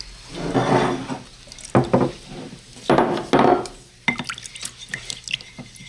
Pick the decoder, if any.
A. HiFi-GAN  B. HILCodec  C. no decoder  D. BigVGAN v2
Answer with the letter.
C